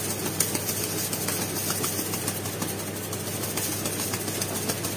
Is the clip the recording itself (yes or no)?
yes